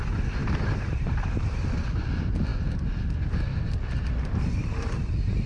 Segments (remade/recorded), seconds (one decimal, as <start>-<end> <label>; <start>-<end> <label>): 0.0-0.4 recorded; 0.4-1.2 remade; 1.2-5.5 recorded